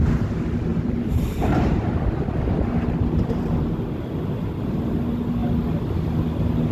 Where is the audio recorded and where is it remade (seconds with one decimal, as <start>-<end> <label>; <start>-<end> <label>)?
0.0-0.7 recorded; 0.7-1.7 remade; 1.7-6.7 recorded